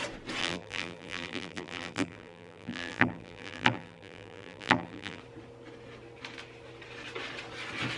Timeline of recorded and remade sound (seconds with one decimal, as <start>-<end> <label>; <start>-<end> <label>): 0.0-0.4 recorded; 0.4-5.2 remade; 5.2-8.0 recorded